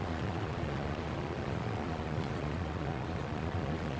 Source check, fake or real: fake